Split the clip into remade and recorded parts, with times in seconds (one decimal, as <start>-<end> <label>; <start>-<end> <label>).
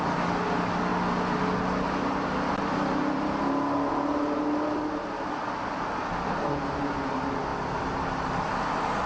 0.0-9.1 recorded